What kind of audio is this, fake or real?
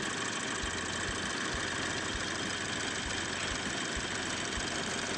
real